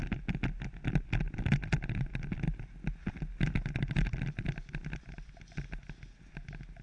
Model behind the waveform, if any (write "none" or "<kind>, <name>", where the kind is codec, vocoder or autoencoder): none